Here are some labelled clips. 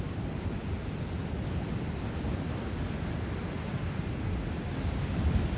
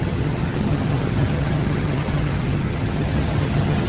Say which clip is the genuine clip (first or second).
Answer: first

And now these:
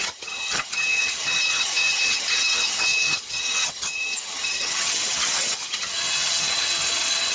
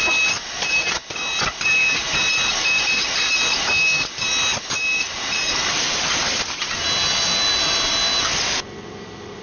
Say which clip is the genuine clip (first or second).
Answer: second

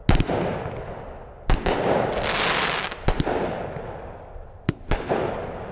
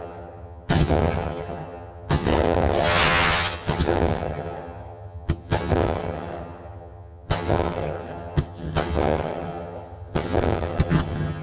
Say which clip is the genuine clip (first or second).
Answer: first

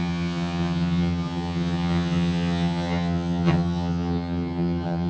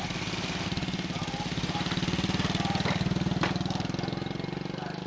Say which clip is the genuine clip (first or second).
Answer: second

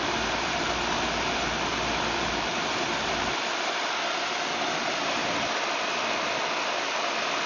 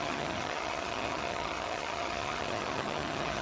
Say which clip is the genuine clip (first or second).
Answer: first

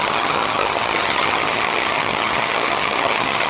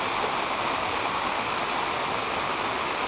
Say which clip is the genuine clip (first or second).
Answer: second